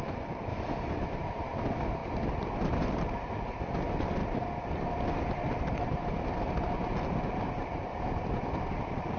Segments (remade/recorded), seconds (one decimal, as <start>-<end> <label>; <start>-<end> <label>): 0.0-0.5 recorded; 0.5-1.3 remade; 1.3-2.0 recorded; 2.0-3.2 remade; 3.2-4.2 recorded; 4.2-4.8 remade; 4.8-9.2 recorded